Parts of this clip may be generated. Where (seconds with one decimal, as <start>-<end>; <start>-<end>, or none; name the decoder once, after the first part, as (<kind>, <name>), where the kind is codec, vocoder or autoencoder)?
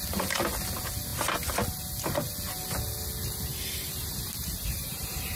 3.5-5.4 (vocoder, BigVGAN v2)